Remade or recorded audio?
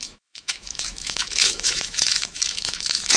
remade